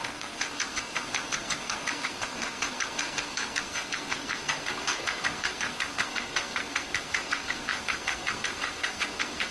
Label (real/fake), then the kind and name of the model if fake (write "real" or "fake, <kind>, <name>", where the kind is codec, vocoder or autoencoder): fake, codec, SNAC